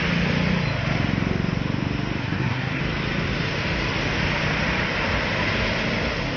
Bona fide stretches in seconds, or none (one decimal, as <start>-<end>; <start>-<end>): 0.0-2.2; 2.8-6.4